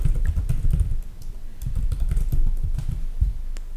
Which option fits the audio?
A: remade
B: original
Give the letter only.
B